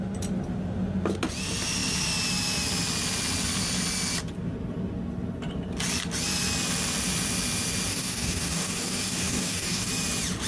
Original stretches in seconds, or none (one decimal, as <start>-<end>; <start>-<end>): 0.0-7.9; 9.9-10.5